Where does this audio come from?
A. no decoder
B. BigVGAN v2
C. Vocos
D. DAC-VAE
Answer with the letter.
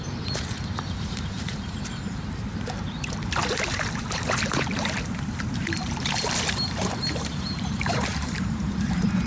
B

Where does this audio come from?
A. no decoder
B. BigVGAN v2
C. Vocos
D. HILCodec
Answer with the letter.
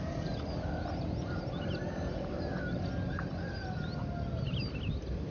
A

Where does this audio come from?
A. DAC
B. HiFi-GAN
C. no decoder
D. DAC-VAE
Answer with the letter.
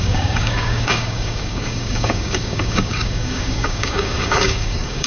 A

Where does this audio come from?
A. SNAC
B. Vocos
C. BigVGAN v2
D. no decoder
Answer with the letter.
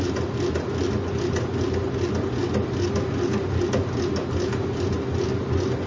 D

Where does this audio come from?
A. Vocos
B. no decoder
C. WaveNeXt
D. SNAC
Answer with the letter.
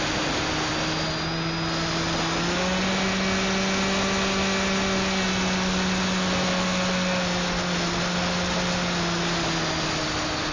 B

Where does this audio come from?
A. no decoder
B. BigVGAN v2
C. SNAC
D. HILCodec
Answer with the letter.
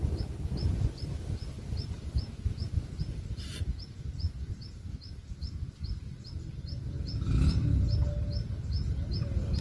A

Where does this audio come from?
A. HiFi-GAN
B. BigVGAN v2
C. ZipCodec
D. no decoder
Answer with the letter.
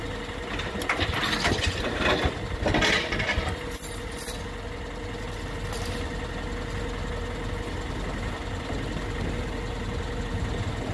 D